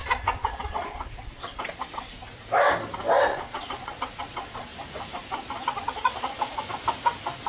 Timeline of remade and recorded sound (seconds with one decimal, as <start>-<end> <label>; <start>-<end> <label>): 0.0-1.6 remade; 1.6-3.3 recorded; 3.3-4.7 remade; 4.7-5.7 recorded; 5.7-6.6 remade; 6.6-7.5 recorded